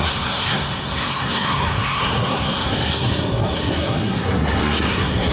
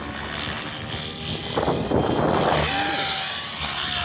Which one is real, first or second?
second